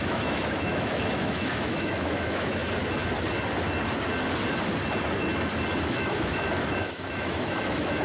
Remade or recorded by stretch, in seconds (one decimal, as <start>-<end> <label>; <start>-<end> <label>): 0.0-2.6 remade; 2.6-5.8 recorded; 5.8-8.0 remade